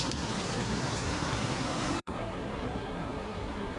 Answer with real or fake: fake